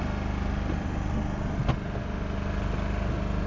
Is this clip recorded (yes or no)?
yes